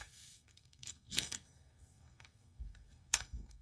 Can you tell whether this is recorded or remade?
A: remade